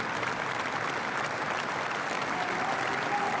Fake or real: real